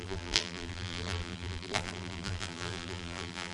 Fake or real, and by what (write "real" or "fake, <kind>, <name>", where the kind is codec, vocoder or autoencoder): fake, vocoder, BigVGAN v2